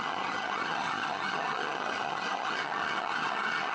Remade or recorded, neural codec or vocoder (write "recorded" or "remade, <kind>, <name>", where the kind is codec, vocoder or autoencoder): remade, vocoder, HiFi-GAN